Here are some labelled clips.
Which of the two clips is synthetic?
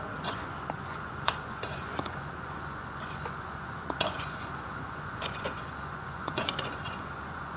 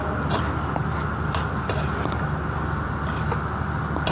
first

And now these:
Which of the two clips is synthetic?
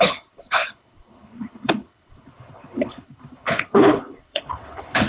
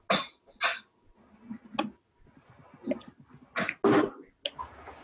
first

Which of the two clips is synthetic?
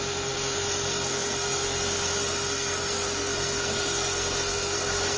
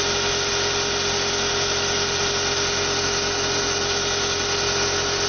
first